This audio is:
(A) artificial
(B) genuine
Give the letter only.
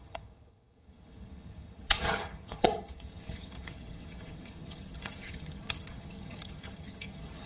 A